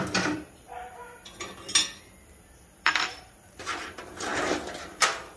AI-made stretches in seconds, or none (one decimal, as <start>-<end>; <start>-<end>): 0.0-1.0; 2.3-4.3; 5.0-5.4